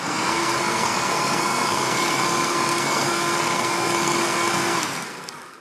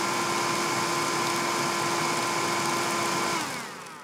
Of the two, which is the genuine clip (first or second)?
second